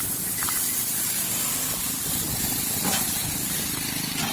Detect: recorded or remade recorded